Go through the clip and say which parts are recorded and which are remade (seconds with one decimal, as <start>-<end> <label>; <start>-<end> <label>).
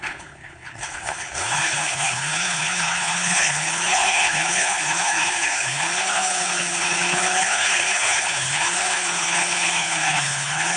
0.0-10.8 remade